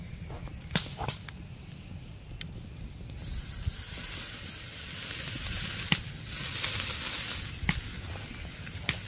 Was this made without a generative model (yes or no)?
yes